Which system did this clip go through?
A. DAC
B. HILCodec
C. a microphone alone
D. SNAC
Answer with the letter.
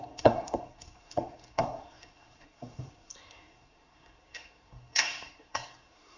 D